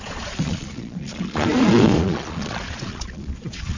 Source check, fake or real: fake